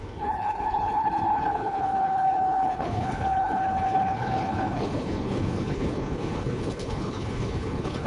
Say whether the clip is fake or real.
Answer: fake